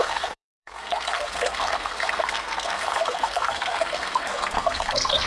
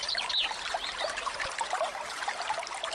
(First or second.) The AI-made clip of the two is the first